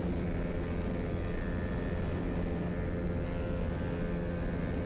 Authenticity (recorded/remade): recorded